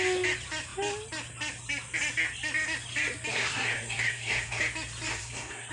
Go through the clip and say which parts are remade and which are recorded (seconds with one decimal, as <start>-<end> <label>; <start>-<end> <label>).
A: 0.0-3.3 recorded; 3.3-4.6 remade; 4.6-5.1 recorded; 5.1-5.7 remade